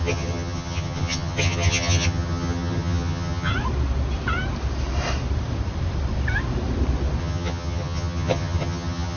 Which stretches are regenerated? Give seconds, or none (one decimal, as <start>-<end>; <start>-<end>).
0.0-3.5; 7.2-9.2